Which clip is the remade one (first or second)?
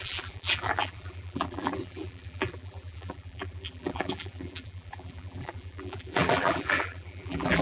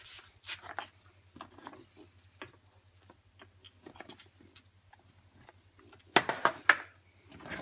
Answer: first